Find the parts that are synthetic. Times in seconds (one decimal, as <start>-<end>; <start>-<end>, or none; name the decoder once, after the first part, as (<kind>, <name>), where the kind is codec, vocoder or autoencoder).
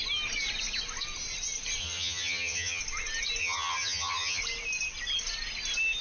1.8-2.8 (vocoder, HiFi-GAN); 3.4-4.4